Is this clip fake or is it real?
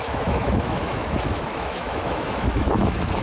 fake